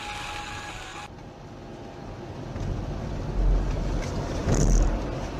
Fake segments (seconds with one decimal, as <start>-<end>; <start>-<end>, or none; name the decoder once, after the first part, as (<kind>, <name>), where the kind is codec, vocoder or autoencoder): 4.4-5.0 (vocoder, BigVGAN v2)